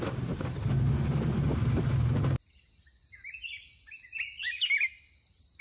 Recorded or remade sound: recorded